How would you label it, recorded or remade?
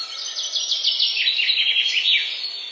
recorded